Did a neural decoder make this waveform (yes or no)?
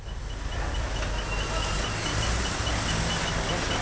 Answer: no